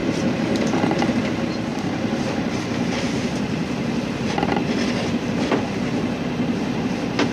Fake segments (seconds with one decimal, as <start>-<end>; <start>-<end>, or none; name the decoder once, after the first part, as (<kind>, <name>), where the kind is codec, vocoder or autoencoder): 0.0-0.8 (vocoder, BigVGAN v2); 1.7-5.7